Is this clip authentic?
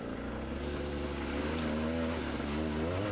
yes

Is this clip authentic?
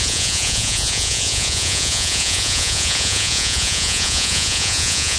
no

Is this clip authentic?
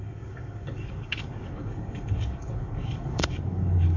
no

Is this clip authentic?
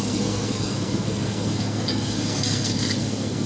no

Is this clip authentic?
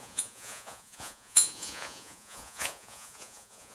no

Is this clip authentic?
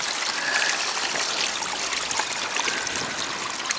yes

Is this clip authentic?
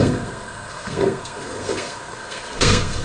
no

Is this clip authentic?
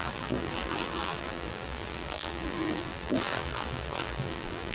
no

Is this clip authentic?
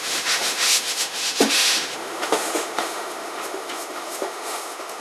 no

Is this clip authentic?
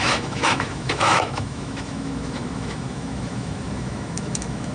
no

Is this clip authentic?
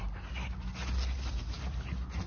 yes